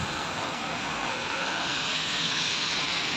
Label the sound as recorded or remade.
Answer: remade